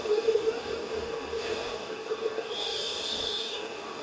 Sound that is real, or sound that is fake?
fake